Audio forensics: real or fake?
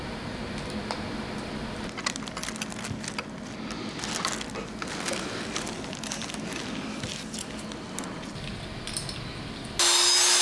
real